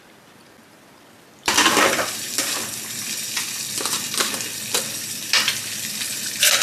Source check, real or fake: real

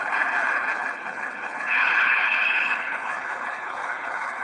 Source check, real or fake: fake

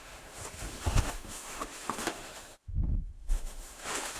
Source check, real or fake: fake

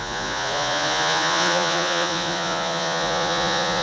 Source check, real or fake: fake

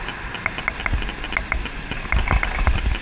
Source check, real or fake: real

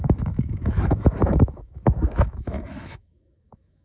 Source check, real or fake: fake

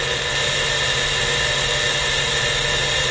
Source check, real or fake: real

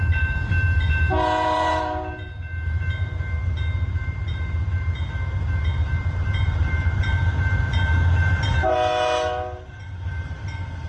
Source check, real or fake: fake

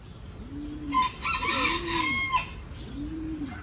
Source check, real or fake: real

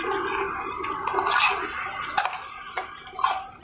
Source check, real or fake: real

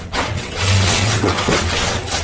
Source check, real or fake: fake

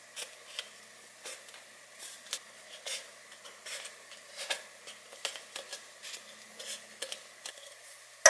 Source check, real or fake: real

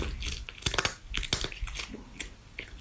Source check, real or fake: real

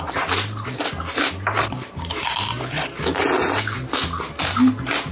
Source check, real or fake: real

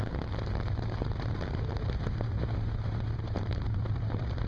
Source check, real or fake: fake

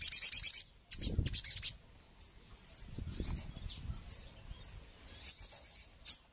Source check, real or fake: real